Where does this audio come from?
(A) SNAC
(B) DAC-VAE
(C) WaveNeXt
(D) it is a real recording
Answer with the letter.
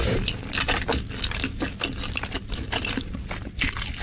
D